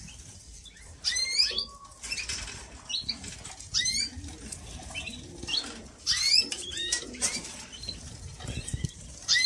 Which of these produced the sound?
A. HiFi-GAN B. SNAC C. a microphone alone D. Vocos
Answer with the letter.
C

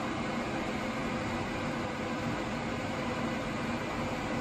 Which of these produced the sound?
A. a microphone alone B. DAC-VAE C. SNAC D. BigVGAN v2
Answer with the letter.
A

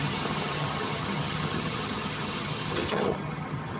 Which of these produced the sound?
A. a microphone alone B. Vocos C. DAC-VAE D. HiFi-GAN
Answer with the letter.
D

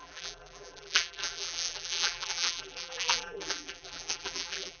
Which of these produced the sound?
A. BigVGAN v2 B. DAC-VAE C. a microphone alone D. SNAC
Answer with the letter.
A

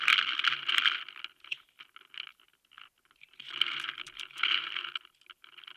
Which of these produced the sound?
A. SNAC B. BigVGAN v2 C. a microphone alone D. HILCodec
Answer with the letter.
C